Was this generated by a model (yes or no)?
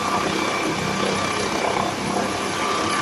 no